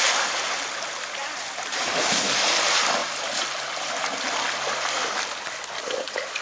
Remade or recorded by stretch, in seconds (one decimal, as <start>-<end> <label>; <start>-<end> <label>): 0.0-1.2 recorded; 1.2-1.8 remade; 1.8-3.0 recorded; 3.0-4.0 remade; 4.0-6.4 recorded